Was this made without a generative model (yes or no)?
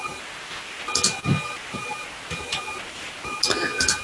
yes